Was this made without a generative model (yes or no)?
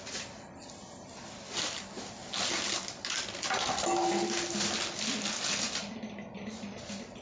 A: yes